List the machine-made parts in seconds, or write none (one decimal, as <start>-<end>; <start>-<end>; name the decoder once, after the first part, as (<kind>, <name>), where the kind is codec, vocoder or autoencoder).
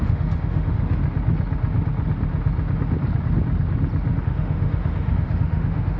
0.0-1.0 (autoencoder, DAC-VAE); 4.2-6.0